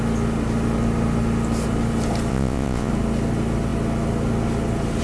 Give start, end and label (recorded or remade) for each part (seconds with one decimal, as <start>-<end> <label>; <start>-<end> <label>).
0.0-2.3 recorded; 2.3-2.9 remade; 2.9-5.0 recorded